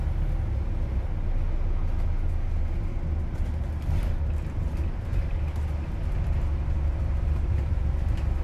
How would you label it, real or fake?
real